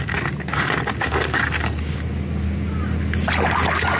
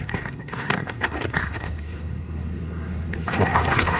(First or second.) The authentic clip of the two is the first